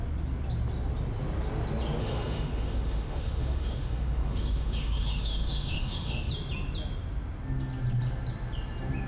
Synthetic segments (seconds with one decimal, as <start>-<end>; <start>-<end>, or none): 2.0-6.3